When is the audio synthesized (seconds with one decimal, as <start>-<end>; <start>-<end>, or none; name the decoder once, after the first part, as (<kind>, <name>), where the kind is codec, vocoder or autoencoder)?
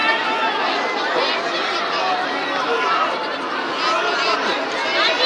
2.6-3.2 (vocoder, BigVGAN v2); 4.0-5.3